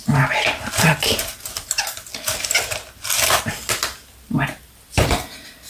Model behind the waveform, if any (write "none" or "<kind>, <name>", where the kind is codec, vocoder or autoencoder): none